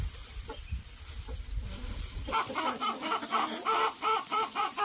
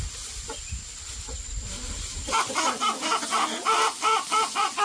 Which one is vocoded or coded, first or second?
first